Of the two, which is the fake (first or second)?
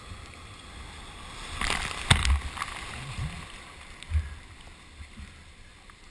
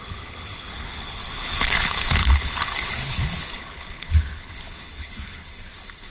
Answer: second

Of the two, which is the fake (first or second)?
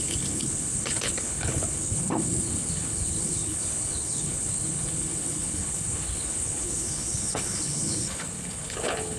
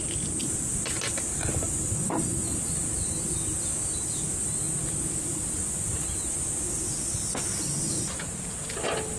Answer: first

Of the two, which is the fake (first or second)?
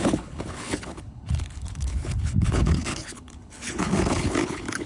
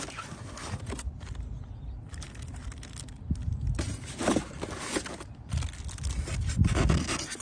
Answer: first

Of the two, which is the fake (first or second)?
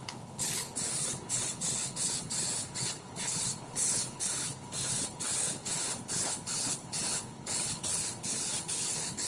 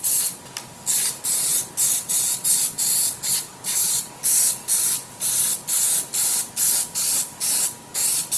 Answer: first